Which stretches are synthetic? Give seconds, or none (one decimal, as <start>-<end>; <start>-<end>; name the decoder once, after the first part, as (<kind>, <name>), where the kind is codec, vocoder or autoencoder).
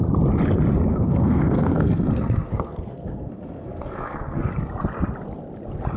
0.9-4.5 (codec, SNAC)